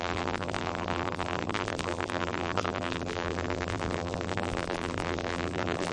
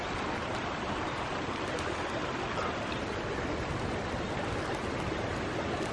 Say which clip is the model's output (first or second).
first